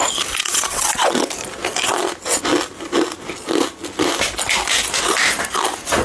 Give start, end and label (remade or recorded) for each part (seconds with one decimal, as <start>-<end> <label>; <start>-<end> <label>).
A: 0.0-0.4 recorded; 0.4-1.3 remade; 1.3-6.0 recorded